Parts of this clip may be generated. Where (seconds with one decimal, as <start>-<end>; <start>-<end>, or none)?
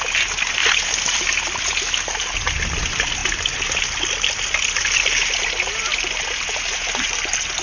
none